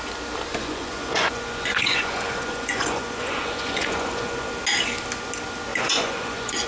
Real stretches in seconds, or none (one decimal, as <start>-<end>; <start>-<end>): 0.0-0.5; 4.5-5.7

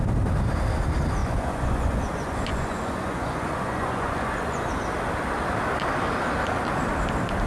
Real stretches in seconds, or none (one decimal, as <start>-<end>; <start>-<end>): 0.0-1.2; 4.7-7.5

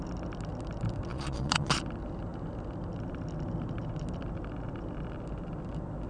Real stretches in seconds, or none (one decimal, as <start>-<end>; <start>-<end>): 0.0-1.1; 1.8-6.1

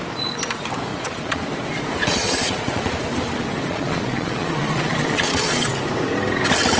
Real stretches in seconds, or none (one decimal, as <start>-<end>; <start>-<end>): 0.0-0.9; 1.4-2.0; 2.9-3.7; 5.7-6.8

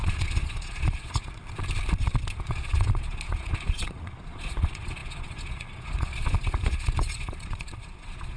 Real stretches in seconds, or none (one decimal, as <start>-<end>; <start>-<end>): 1.4-2.4

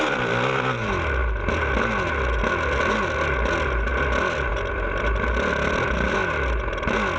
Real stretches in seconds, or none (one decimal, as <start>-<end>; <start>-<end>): 0.0-7.2